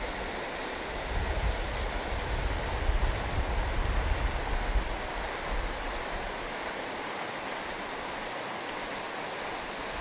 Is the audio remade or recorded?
recorded